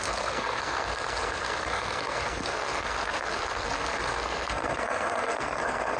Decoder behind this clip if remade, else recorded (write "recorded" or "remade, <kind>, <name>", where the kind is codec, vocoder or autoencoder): remade, codec, SNAC